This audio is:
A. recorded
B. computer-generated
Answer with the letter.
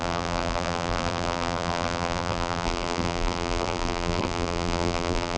B